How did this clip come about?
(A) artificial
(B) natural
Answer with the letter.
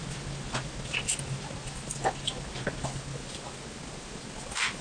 B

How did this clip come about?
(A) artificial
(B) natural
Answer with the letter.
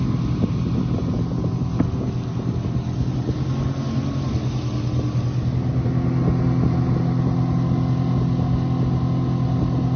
B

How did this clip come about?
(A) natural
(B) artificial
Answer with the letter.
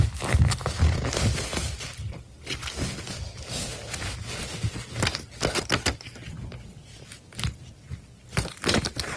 A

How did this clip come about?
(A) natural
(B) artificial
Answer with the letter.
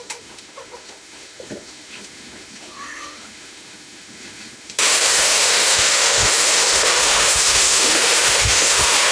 B